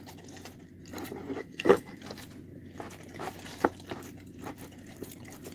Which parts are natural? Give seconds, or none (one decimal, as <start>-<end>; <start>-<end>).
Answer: 0.0-1.4; 2.0-5.5